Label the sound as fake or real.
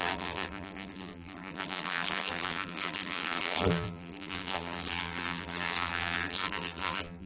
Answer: fake